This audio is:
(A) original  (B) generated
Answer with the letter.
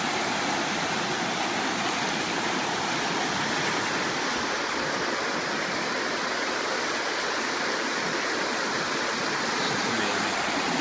A